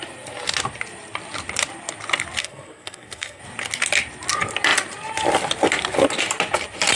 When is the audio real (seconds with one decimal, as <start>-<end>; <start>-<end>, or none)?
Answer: 0.0-2.4; 3.4-7.0